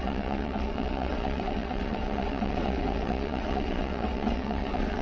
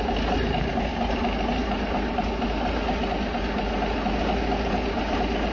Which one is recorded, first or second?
second